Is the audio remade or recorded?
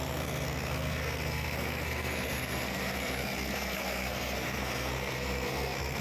remade